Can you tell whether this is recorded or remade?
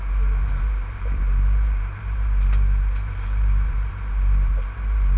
remade